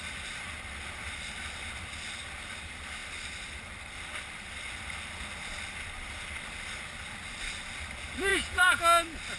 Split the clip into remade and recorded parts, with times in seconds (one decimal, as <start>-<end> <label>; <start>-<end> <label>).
0.0-8.3 recorded; 8.3-8.8 remade; 8.8-9.4 recorded